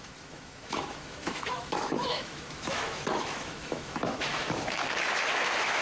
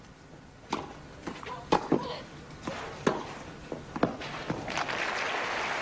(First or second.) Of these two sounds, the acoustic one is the second